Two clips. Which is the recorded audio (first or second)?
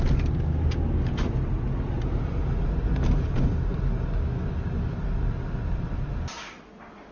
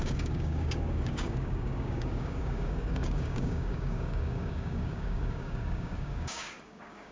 first